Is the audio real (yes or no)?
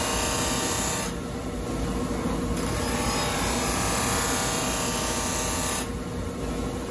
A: yes